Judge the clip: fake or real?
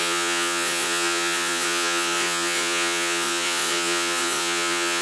fake